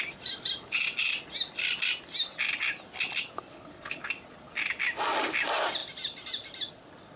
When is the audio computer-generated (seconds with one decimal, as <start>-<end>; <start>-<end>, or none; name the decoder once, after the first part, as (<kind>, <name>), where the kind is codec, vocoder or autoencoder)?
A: 3.5-4.0 (codec, HILCodec)